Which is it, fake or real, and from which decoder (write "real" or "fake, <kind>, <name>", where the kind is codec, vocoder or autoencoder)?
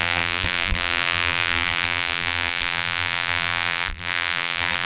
fake, vocoder, BigVGAN v2